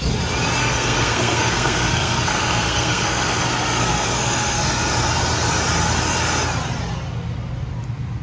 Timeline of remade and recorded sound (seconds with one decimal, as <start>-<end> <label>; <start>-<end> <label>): 0.0-0.6 recorded; 0.6-4.9 remade; 4.9-8.2 recorded